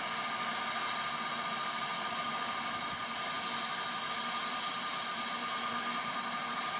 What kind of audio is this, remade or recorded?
recorded